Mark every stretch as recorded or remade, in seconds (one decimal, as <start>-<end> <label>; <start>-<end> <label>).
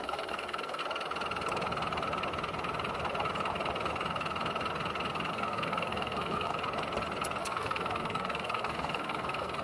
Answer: 0.0-0.8 remade; 0.8-5.3 recorded; 5.3-6.5 remade; 6.5-7.4 recorded; 7.4-9.6 remade